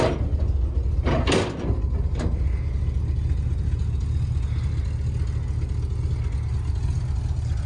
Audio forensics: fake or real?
real